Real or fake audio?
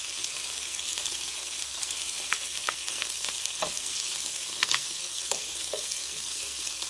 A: fake